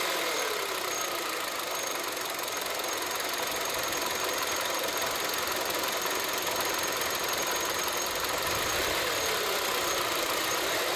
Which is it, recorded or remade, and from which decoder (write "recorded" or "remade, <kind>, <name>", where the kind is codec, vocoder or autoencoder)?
remade, vocoder, BigVGAN v2